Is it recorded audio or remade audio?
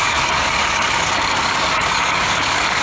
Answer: remade